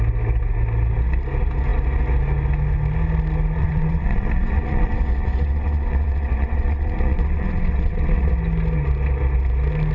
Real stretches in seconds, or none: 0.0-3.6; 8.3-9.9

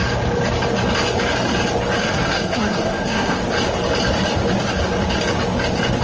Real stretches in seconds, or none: 0.0-2.0; 3.4-6.0

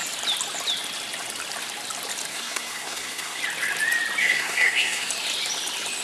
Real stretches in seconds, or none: 0.0-2.3; 3.4-4.2; 5.1-6.0

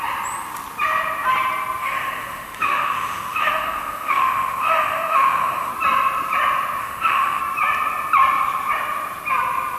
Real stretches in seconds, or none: 0.0-1.8; 5.7-6.8; 7.4-9.8